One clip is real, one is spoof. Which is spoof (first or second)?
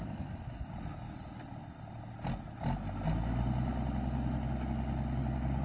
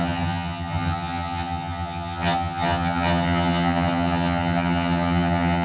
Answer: second